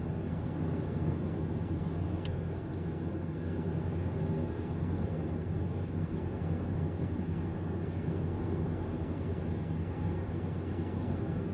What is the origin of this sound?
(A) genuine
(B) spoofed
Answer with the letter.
B